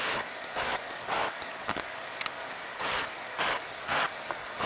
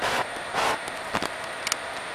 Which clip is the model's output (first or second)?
first